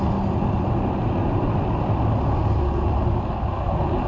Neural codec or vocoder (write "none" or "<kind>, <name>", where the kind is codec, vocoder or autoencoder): none